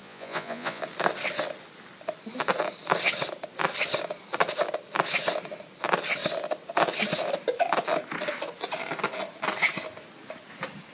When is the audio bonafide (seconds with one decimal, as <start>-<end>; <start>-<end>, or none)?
0.8-10.9